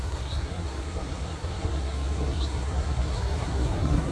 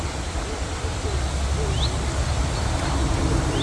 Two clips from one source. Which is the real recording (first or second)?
second